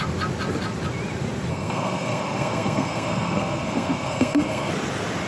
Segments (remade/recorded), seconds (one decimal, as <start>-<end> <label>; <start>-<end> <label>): 0.0-1.5 recorded; 1.5-4.7 remade; 4.7-5.3 recorded